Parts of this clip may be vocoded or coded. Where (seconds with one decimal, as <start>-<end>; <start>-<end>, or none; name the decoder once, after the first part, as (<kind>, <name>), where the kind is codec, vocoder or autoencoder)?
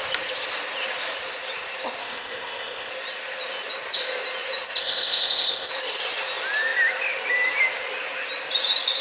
2.0-2.9 (codec, ZipCodec); 4.8-5.7